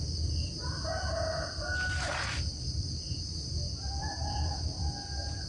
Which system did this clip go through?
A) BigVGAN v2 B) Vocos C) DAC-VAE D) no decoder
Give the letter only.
D